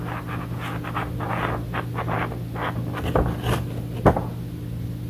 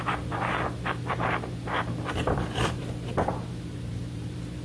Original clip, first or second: first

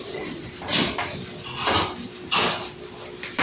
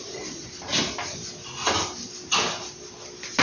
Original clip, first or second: second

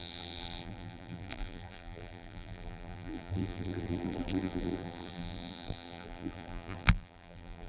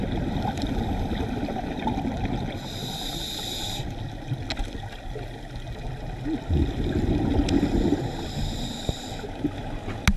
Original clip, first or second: second